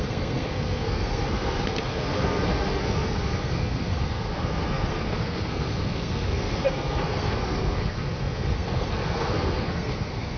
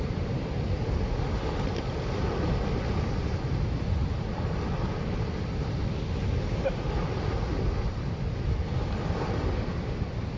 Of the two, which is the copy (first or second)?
first